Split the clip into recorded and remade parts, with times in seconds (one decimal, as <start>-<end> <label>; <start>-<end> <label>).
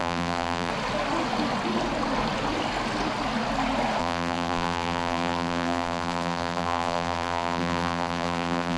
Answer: 0.0-0.7 remade; 0.7-4.0 recorded; 4.0-8.8 remade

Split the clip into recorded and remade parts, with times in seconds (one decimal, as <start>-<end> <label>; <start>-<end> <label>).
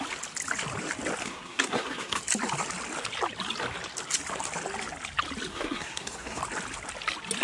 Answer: 0.0-1.2 recorded; 1.2-2.2 remade; 2.2-5.5 recorded; 5.5-6.4 remade; 6.4-7.4 recorded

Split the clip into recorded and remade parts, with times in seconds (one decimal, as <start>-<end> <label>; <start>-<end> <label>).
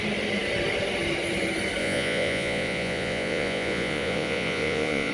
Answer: 0.0-1.8 recorded; 1.8-5.1 remade